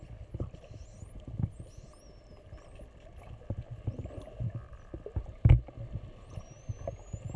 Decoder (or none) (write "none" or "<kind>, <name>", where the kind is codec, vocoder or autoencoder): none